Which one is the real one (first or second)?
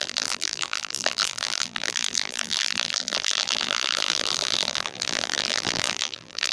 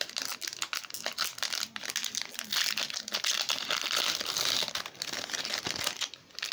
second